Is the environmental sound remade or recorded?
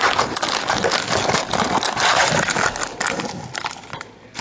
recorded